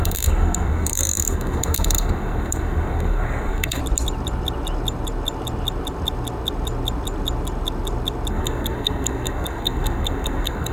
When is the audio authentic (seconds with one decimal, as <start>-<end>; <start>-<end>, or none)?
3.8-8.3